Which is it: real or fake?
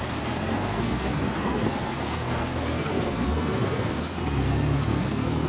fake